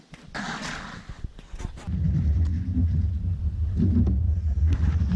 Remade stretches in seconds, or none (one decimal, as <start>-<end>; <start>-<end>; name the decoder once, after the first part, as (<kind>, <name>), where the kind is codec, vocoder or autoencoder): none